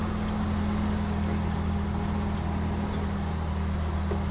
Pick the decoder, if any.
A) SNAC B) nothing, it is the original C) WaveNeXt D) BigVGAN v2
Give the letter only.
B